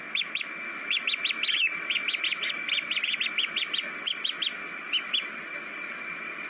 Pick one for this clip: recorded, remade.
recorded